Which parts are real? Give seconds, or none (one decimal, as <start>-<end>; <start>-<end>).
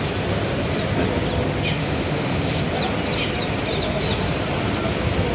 0.0-1.8; 2.6-5.3